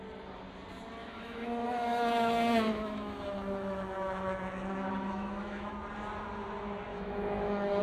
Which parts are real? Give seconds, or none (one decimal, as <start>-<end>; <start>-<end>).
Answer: 0.0-1.0; 5.7-6.9